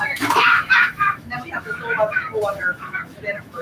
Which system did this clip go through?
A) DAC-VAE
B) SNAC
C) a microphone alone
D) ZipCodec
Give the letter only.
A